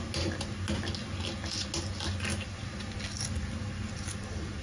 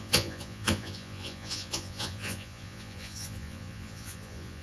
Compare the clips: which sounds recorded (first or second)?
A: first